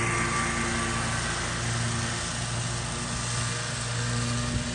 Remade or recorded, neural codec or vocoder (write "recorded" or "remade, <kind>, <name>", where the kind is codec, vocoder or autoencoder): recorded